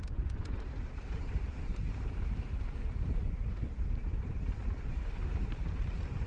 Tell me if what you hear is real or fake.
fake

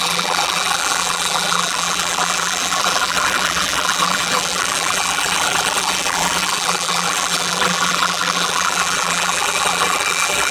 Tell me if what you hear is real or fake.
fake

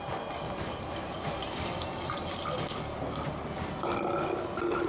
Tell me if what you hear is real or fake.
real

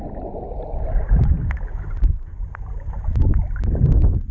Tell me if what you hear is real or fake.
real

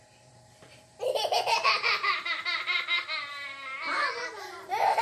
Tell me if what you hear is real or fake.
fake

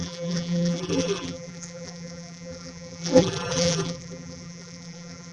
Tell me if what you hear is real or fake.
fake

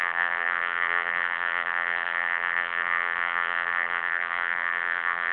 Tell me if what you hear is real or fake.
fake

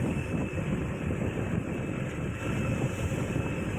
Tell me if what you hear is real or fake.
fake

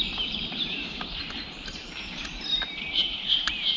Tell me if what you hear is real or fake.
fake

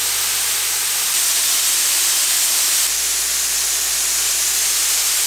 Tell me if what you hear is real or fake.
real